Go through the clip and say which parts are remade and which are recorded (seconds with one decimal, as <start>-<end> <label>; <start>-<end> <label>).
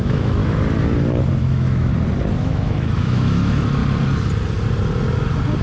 0.0-0.4 remade; 0.4-1.4 recorded; 1.4-1.9 remade; 1.9-2.4 recorded; 2.4-3.8 remade; 3.8-5.6 recorded